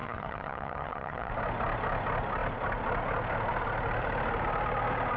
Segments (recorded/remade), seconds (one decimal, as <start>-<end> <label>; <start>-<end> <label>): 0.0-1.3 remade; 1.3-5.2 recorded